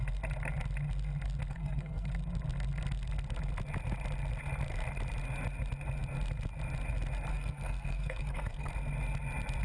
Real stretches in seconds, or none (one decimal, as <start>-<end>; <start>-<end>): 0.0-1.5; 2.1-7.3; 8.7-9.6